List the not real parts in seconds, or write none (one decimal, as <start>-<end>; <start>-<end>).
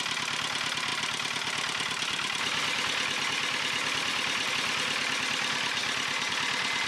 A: none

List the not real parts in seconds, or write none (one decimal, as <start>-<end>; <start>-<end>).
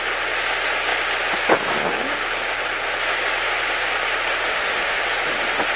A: 4.5-5.0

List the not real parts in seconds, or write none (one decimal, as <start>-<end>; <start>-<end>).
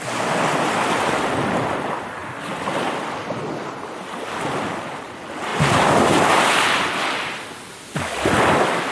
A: none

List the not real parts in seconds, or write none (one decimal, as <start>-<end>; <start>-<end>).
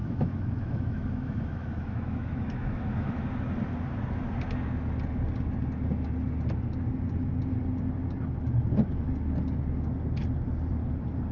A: 0.0-3.2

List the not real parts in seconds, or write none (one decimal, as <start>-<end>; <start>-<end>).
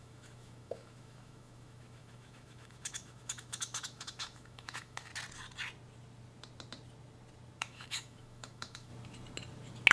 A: 0.0-5.1; 7.6-8.9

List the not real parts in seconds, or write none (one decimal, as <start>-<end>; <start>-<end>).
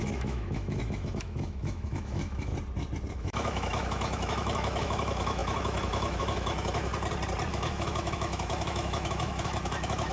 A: 0.0-2.5; 3.1-6.9; 7.5-10.1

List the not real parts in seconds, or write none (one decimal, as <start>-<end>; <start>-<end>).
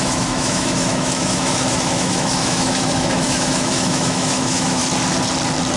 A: 0.0-4.8